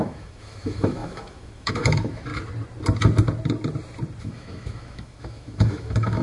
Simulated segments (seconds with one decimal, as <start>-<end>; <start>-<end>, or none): 0.0-2.3; 4.2-6.2